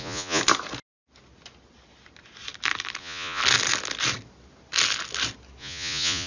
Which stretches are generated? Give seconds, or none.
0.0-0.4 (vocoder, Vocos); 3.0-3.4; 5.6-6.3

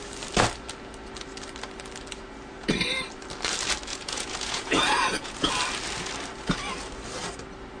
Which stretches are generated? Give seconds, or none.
3.9-5.5 (vocoder, Vocos)

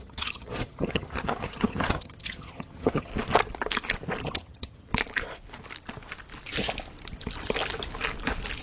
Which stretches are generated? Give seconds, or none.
0.0-3.1 (vocoder, HiFi-GAN); 4.2-4.9